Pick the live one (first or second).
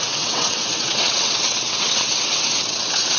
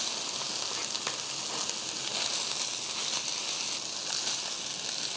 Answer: second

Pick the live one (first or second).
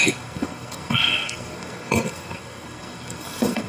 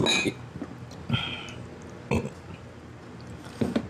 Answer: second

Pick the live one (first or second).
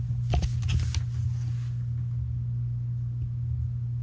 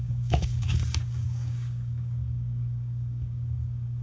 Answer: first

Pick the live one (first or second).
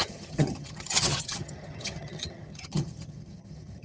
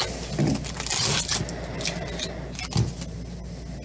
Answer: second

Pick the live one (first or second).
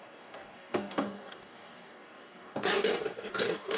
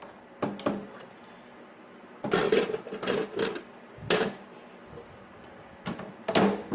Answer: second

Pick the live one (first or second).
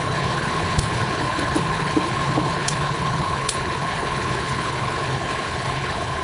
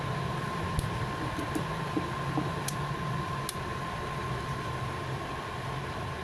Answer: second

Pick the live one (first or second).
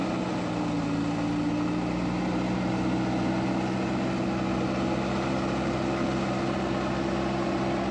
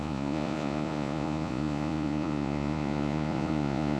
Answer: first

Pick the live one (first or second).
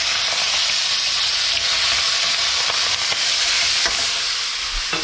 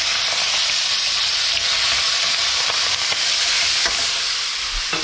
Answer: first